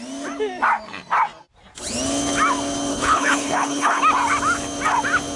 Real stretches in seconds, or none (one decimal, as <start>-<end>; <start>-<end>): 0.0-2.9; 4.0-5.4